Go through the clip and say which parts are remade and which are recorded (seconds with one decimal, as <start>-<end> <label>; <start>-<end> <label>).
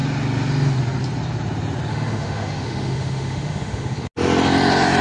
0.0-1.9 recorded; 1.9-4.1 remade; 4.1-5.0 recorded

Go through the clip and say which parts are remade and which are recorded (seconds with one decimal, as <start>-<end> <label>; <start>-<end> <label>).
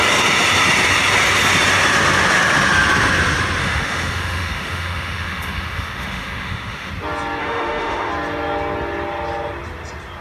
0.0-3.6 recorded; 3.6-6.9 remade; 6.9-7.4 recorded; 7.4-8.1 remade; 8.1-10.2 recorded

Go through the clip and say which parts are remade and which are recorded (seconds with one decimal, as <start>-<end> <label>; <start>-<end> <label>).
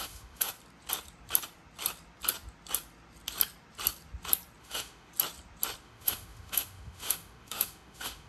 0.0-0.5 remade; 0.5-4.6 recorded; 4.6-5.1 remade; 5.1-5.8 recorded; 5.8-8.3 remade